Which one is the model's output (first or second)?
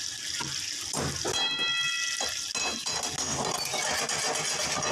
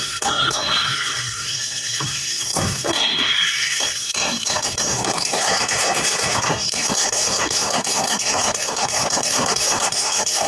second